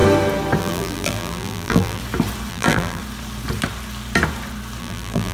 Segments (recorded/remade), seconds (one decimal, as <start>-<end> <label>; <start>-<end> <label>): 0.0-0.6 recorded; 0.6-2.0 remade; 2.0-2.5 recorded; 2.5-3.0 remade; 3.0-4.8 recorded; 4.8-5.3 remade